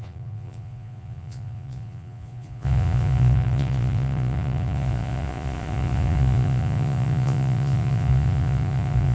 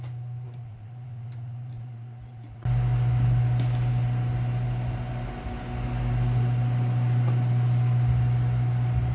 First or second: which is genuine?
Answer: second